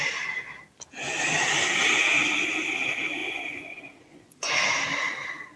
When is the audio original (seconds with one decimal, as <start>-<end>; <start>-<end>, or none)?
0.0-3.2; 4.5-5.6